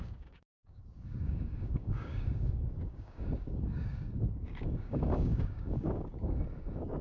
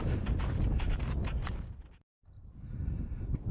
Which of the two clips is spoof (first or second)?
first